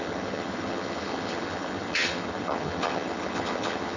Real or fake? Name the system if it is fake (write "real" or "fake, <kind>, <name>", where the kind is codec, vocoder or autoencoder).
fake, vocoder, HiFi-GAN